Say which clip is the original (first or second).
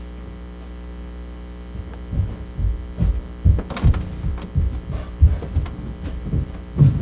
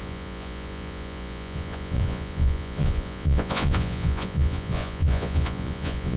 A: first